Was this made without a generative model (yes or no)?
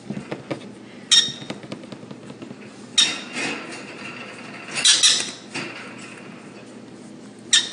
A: yes